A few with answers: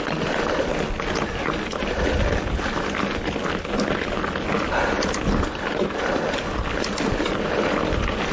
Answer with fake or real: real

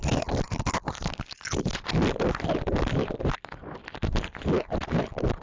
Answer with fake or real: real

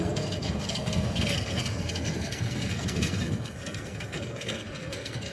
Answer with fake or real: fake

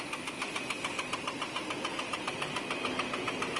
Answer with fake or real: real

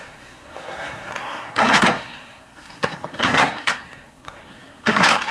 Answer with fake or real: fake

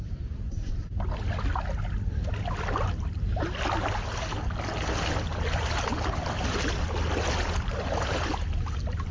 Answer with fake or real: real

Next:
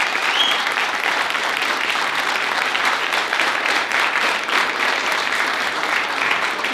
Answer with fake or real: fake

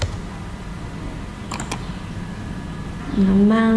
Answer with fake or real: real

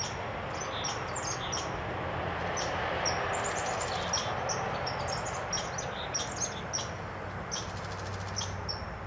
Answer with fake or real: real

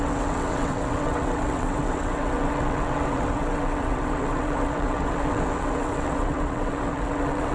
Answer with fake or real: fake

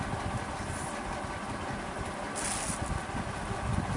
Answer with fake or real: real